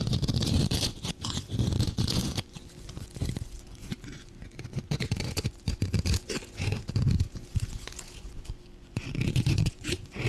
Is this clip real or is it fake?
fake